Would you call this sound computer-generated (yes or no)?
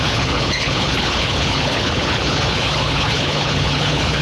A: yes